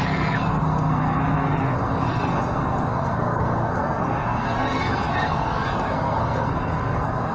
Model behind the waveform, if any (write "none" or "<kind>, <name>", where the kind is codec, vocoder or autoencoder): codec, SNAC